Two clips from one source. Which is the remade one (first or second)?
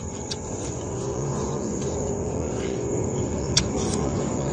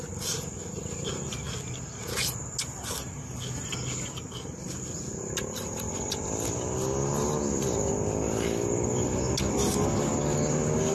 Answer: first